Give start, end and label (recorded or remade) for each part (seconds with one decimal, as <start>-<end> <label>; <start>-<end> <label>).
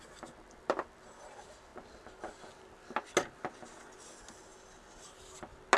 0.0-5.8 recorded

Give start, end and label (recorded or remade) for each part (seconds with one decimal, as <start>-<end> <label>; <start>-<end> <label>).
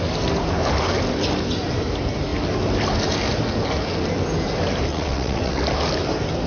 0.0-4.9 recorded; 4.9-5.6 remade; 5.6-6.5 recorded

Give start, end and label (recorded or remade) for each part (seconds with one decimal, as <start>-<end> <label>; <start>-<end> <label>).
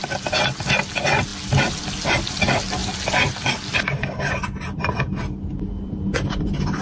0.0-6.8 recorded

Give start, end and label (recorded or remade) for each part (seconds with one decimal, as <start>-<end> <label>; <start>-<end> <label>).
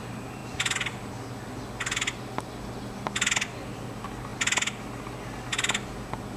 0.0-6.4 recorded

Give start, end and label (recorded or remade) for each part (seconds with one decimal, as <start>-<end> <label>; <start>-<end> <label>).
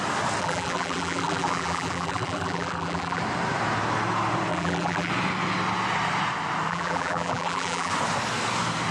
0.0-0.4 recorded; 0.4-3.2 remade; 3.2-4.5 recorded; 4.5-5.1 remade; 5.1-6.7 recorded; 6.7-7.9 remade; 7.9-8.9 recorded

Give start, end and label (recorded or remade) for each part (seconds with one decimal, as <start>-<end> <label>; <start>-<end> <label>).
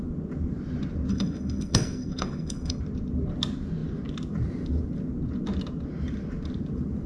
0.0-1.1 recorded; 1.1-2.8 remade; 2.8-7.1 recorded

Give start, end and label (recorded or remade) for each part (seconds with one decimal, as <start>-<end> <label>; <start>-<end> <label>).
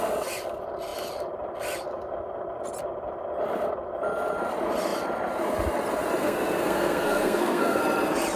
0.0-6.2 recorded; 6.2-7.8 remade; 7.8-8.4 recorded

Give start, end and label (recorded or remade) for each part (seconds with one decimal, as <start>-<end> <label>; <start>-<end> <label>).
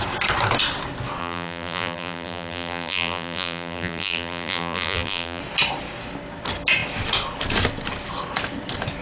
0.0-1.2 recorded; 1.2-5.4 remade; 5.4-9.0 recorded